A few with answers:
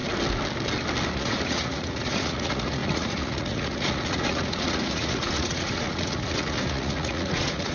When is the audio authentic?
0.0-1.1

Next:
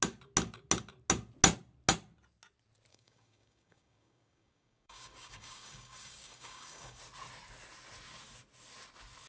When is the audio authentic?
0.0-2.9; 7.0-9.3

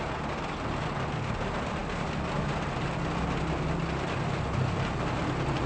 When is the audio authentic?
0.0-5.7

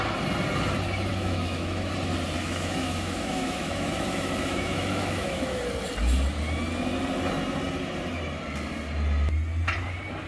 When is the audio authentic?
0.0-1.1; 1.9-2.4; 5.6-10.3

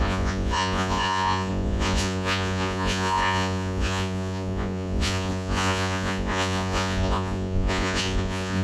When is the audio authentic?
none